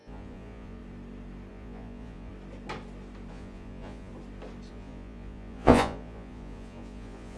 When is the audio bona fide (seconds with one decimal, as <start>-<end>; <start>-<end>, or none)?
0.8-1.5; 2.3-3.3; 4.1-4.7